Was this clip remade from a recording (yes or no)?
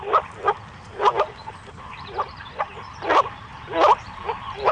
no